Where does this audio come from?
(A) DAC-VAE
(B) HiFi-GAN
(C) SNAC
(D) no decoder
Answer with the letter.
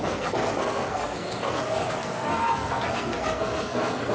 C